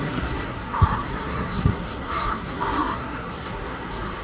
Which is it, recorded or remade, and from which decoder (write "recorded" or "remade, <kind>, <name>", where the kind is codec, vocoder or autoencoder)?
remade, codec, SNAC